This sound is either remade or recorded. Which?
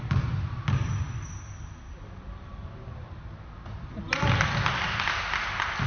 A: recorded